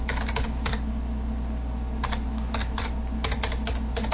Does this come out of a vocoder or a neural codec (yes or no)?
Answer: no